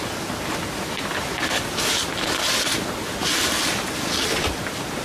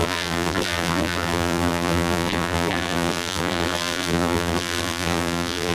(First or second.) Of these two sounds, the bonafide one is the first